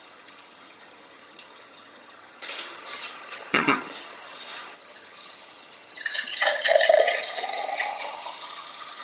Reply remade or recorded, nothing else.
remade